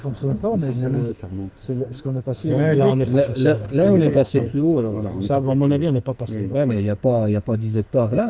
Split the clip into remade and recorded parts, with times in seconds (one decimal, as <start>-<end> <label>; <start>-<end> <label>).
0.0-8.3 remade